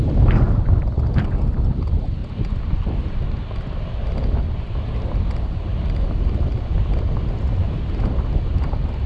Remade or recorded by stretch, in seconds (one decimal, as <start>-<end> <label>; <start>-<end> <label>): 0.0-1.7 recorded; 1.7-2.2 remade; 2.2-5.3 recorded; 5.3-6.5 remade; 6.5-9.1 recorded

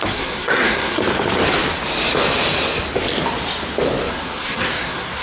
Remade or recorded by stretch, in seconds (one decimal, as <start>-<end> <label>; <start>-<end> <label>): 0.0-1.0 remade; 1.0-4.1 recorded; 4.1-5.2 remade

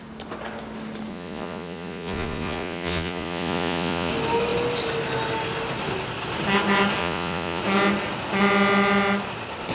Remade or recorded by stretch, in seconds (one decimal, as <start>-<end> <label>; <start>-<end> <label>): 0.0-1.1 recorded; 1.1-4.1 remade; 4.1-7.0 recorded; 7.0-7.6 remade; 7.6-9.7 recorded

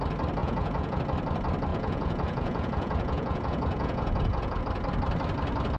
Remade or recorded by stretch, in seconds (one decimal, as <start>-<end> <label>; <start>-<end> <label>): 0.0-0.4 recorded; 0.4-1.0 remade; 1.0-1.7 recorded; 1.7-4.6 remade; 4.6-5.8 recorded

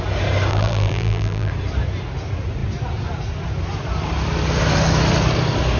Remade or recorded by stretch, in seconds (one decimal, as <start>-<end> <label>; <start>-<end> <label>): 0.0-0.5 recorded; 0.5-1.5 remade; 1.5-5.8 recorded

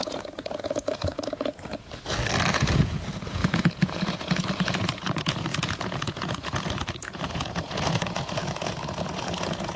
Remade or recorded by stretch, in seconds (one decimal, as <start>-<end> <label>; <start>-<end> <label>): 0.0-1.7 remade; 1.7-2.5 recorded; 2.5-9.8 remade